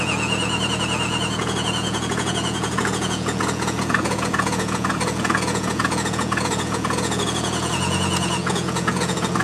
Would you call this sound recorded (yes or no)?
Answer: no